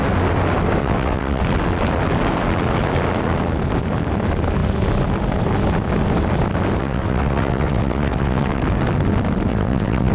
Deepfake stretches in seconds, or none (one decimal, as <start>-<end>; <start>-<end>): 0.8-1.4; 6.8-8.6; 9.5-10.1